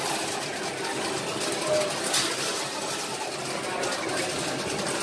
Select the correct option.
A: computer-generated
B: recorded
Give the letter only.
B